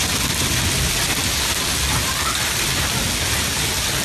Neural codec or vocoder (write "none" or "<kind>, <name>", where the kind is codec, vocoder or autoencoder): none